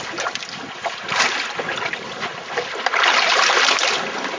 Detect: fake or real real